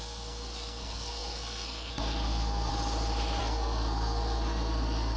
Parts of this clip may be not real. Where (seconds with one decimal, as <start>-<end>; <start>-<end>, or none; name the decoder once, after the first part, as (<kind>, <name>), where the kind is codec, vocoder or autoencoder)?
0.0-2.7 (codec, SNAC); 3.4-5.2